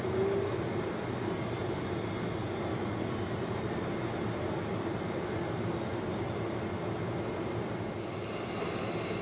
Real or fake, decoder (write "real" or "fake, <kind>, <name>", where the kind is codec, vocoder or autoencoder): real